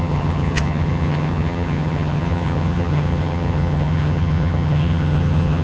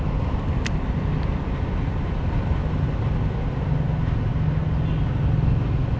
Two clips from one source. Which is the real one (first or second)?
second